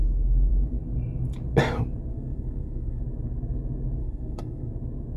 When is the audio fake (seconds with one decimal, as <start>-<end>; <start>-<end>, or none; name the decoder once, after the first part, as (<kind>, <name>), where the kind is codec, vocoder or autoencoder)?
2.1-3.0 (codec, SNAC); 4.0-4.7